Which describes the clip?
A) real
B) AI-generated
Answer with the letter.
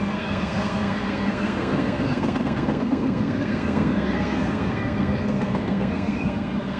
B